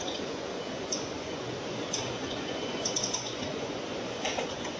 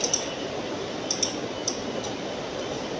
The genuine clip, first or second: second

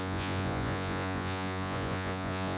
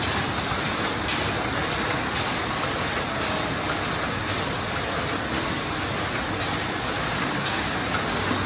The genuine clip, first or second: second